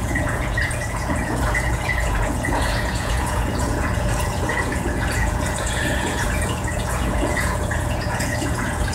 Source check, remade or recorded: remade